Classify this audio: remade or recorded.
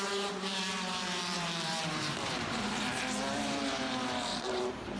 remade